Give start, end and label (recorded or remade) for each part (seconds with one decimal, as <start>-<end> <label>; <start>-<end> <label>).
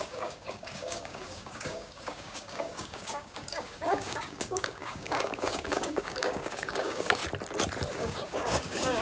0.0-7.2 remade; 7.2-7.9 recorded; 7.9-9.0 remade